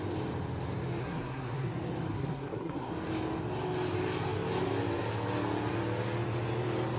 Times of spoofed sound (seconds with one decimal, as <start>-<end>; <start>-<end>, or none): 1.0-1.7; 2.1-2.9